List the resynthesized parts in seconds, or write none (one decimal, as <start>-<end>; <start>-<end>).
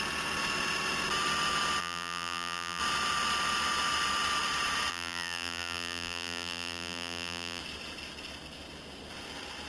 1.8-2.8; 4.9-7.6